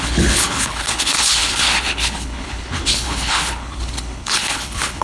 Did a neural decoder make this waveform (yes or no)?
yes